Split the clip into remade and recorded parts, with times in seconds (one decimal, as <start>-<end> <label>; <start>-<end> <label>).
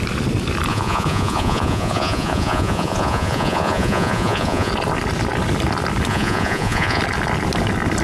0.0-0.7 recorded; 0.7-4.7 remade; 4.7-6.1 recorded; 6.1-7.0 remade; 7.0-8.0 recorded